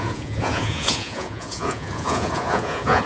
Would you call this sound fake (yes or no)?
yes